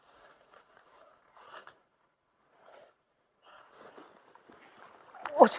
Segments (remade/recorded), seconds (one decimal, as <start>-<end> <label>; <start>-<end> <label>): 0.0-4.0 remade; 4.0-5.6 recorded